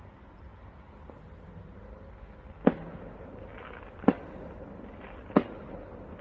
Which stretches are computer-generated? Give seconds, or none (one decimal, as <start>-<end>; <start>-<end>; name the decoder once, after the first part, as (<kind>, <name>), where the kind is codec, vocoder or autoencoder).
none